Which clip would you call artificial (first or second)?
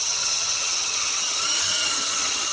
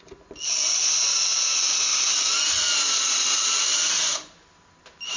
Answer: first